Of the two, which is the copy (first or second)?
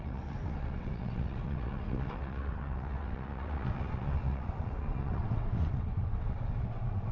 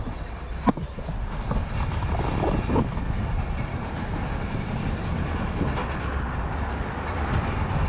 first